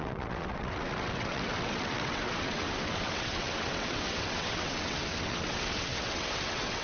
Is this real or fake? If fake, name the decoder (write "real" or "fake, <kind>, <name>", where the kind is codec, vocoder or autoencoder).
fake, vocoder, WaveNeXt